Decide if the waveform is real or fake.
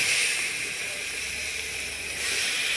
fake